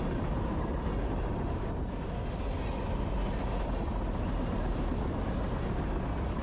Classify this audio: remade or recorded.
recorded